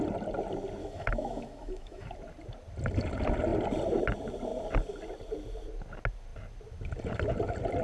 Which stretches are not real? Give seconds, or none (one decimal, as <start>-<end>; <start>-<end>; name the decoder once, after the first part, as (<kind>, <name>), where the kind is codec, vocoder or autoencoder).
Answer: 0.8-2.1 (autoencoder, DAC-VAE)